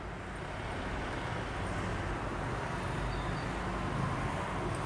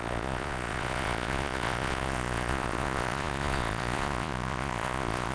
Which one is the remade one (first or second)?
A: second